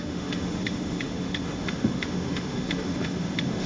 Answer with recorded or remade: remade